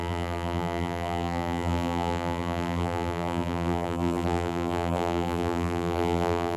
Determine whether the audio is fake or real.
fake